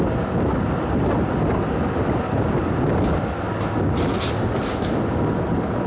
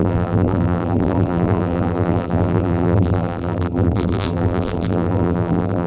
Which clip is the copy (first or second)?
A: second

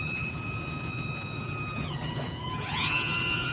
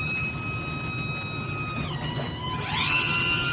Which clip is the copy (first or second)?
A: first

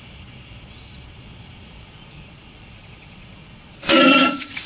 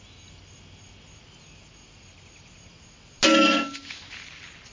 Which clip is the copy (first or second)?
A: first